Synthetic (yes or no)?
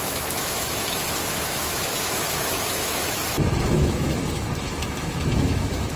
yes